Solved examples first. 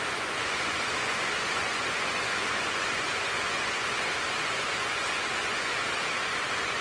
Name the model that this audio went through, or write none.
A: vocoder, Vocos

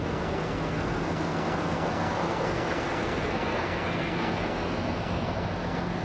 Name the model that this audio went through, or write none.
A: codec, SNAC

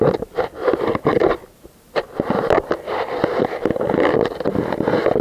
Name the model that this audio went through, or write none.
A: vocoder, BigVGAN v2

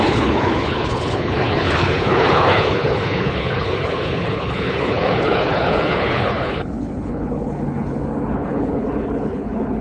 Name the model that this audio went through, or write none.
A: codec, HILCodec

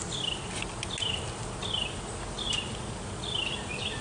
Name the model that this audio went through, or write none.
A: none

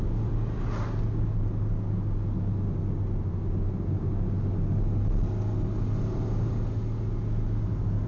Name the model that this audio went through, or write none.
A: none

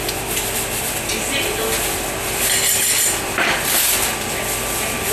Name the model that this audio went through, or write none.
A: none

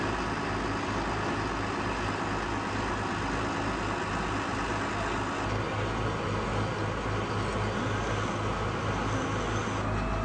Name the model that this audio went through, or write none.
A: none